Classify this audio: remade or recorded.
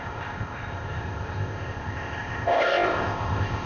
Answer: remade